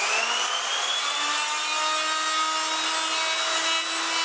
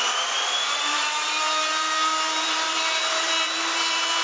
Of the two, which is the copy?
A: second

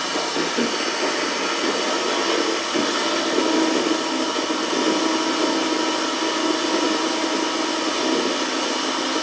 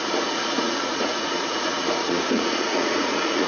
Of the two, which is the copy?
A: second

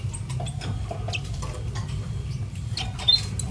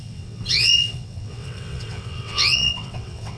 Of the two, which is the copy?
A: second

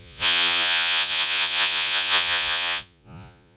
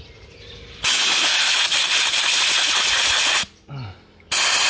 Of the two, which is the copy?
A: first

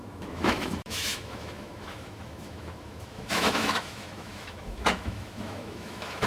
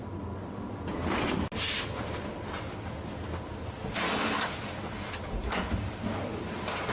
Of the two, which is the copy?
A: first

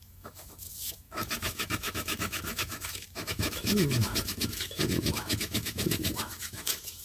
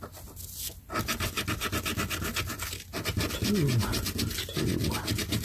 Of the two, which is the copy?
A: first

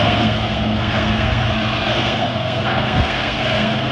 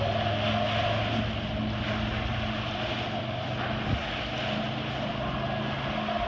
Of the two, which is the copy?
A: first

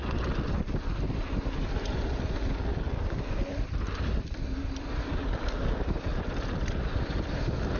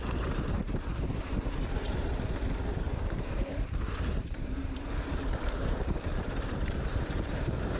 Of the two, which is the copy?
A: second